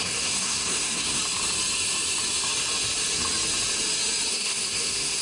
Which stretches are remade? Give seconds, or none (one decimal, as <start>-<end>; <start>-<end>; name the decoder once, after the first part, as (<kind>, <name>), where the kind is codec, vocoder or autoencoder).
0.0-1.2 (codec, SNAC); 4.3-5.2